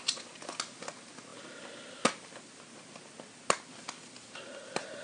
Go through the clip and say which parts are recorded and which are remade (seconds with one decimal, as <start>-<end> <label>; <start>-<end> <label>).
0.0-5.0 recorded